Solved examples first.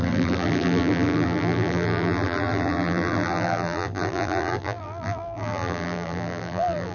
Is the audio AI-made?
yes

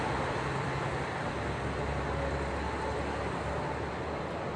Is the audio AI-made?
no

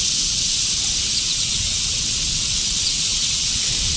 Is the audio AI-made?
yes